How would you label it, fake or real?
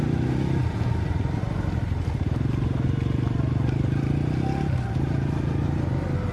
real